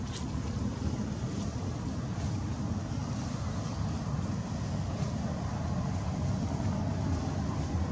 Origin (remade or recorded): recorded